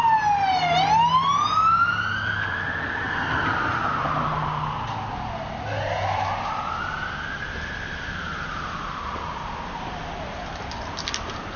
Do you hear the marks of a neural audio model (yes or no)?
no